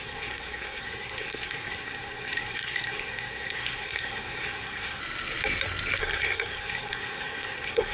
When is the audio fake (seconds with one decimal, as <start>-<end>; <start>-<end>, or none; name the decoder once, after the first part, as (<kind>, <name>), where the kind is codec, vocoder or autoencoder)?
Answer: 0.0-5.0 (codec, SNAC); 6.0-7.9